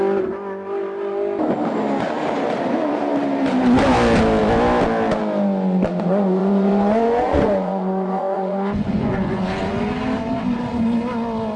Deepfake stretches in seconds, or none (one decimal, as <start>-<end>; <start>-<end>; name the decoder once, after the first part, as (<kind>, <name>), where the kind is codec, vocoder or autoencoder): 6.4-9.8 (vocoder, Vocos)